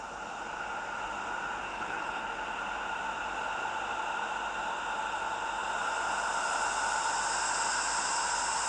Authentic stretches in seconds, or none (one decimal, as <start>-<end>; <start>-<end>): 0.0-1.7; 2.2-8.7